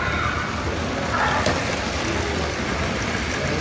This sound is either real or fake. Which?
real